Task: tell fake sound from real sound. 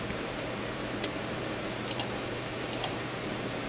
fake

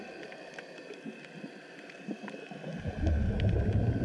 real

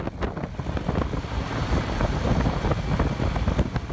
real